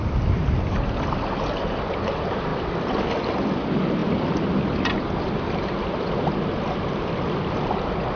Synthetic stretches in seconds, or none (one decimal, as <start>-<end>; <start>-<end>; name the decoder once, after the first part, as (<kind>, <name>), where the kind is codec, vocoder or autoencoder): none